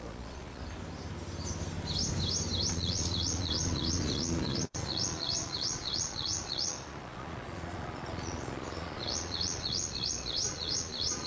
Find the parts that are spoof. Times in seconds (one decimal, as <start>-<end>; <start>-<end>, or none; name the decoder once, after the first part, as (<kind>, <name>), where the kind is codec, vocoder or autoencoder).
0.0-0.6 (vocoder, Vocos); 2.7-11.3